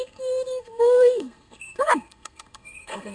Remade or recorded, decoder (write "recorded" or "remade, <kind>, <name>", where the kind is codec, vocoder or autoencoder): remade, codec, SNAC